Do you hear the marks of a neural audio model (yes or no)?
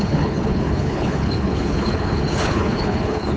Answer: yes